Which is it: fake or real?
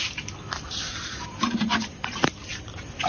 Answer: real